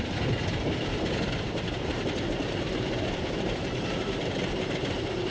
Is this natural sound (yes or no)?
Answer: no